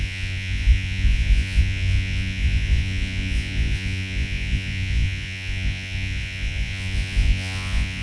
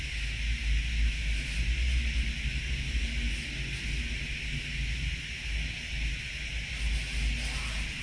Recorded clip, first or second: second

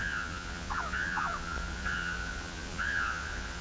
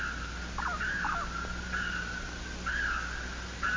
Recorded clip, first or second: second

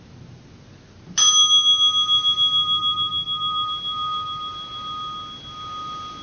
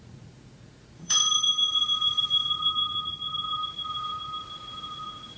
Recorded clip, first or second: first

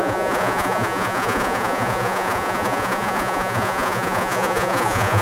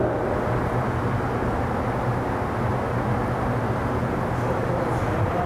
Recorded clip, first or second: second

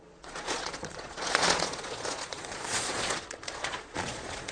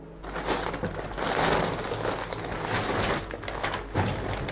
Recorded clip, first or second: second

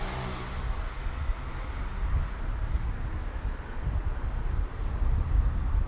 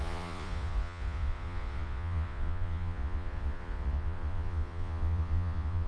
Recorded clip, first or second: first